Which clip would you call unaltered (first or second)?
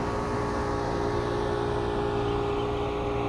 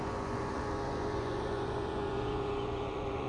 first